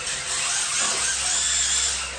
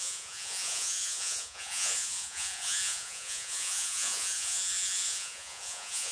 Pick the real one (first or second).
first